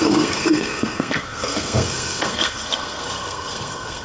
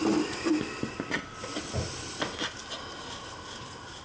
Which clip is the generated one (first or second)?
first